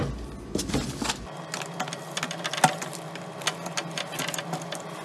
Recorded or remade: recorded